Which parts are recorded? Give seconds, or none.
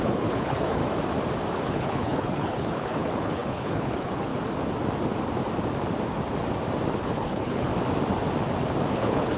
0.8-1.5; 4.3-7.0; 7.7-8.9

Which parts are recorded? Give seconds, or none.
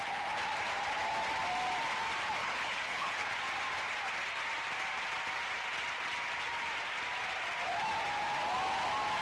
0.0-2.4; 3.4-9.2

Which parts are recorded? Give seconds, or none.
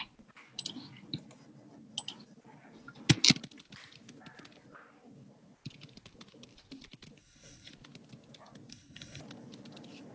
0.0-7.2; 7.7-8.7; 9.2-10.1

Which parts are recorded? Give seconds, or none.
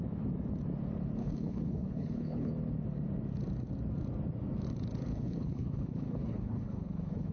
0.0-1.2; 2.5-5.1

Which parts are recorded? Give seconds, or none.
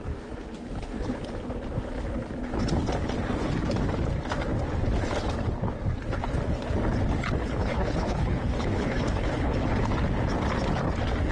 0.0-7.4; 9.5-11.3